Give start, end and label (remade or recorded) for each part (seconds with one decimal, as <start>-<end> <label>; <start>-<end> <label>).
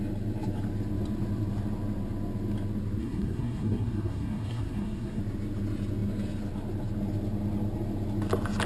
0.0-3.0 recorded; 3.0-5.2 remade; 5.2-8.7 recorded